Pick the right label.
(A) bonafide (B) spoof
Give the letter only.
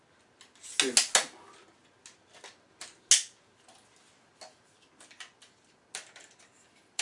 A